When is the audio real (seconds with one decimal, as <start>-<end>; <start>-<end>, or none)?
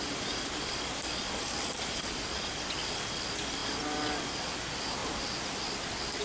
0.0-6.2